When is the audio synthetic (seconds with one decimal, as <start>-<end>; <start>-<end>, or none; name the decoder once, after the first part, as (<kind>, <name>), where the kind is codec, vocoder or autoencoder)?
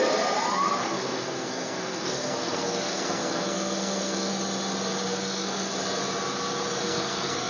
0.8-4.3 (codec, SNAC); 5.1-5.7; 6.8-7.5